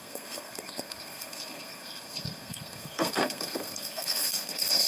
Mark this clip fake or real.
fake